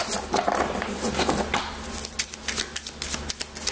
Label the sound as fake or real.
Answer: real